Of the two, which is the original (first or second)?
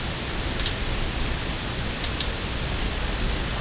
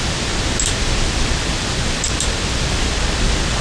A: first